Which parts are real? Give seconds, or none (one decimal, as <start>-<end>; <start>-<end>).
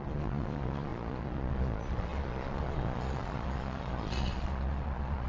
none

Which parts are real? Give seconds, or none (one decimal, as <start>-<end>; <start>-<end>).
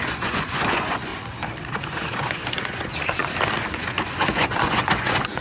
1.1-1.7; 3.2-3.7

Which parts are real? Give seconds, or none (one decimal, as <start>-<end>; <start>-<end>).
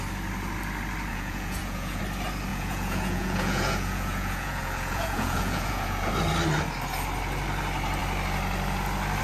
0.0-1.1; 2.0-2.5; 6.1-9.2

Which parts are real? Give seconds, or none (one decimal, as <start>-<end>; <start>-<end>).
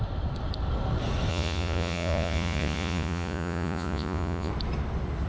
0.0-1.3; 4.5-5.3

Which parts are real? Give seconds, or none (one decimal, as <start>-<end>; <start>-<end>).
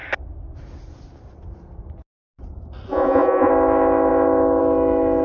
0.0-2.9; 3.5-5.2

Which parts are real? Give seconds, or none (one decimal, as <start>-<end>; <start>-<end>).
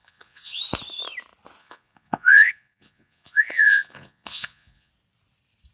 0.6-1.6; 4.9-5.7